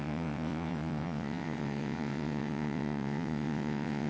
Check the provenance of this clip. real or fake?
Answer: fake